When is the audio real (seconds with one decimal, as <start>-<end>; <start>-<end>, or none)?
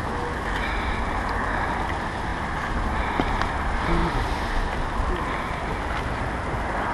0.0-2.3; 3.5-6.9